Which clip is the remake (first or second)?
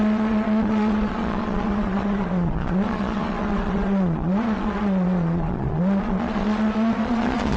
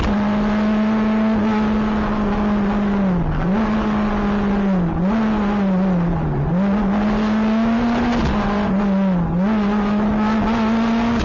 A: first